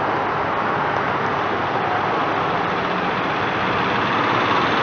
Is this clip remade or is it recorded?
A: recorded